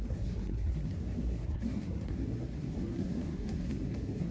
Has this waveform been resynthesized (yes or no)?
yes